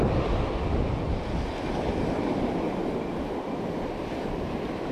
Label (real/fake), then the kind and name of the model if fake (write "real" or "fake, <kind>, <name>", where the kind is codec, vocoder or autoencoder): real